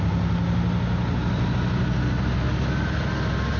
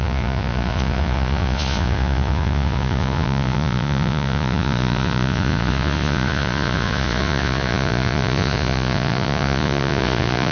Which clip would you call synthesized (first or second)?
second